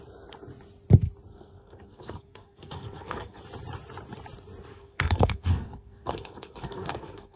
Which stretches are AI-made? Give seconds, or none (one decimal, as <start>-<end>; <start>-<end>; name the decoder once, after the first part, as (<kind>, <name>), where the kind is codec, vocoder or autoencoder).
1.3-3.4 (codec, SNAC); 4.7-7.4